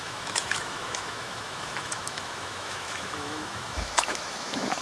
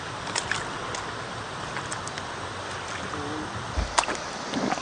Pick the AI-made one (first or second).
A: first